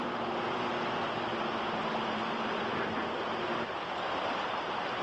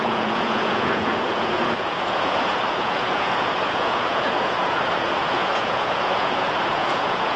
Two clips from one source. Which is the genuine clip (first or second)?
first